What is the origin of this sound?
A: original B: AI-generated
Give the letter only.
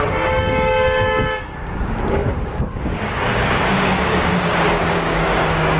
B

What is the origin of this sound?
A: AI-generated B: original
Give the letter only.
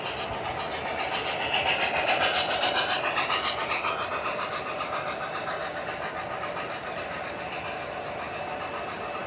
B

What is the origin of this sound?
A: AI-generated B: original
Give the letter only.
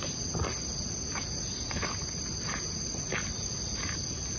B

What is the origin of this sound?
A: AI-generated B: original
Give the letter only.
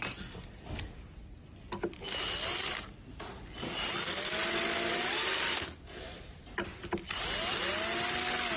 B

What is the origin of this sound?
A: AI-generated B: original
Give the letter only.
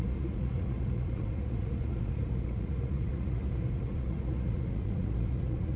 A